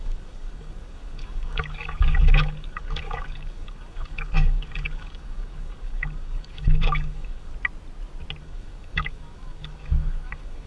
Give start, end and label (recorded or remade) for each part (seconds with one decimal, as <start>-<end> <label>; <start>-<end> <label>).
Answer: 0.0-7.5 remade; 7.5-8.4 recorded; 8.4-10.7 remade